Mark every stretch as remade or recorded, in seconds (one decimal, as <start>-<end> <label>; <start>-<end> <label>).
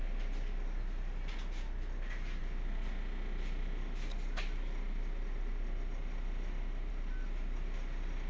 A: 0.0-8.3 recorded